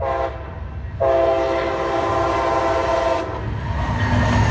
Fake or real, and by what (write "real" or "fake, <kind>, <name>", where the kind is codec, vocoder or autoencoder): real